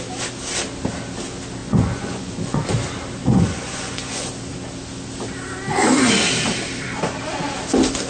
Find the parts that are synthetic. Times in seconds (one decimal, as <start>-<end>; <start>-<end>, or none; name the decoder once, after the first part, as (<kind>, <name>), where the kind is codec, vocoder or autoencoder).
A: 1.6-2.6 (vocoder, Vocos); 3.2-4.3